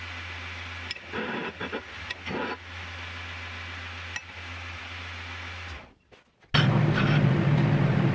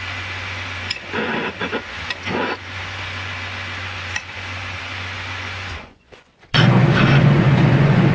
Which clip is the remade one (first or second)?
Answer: second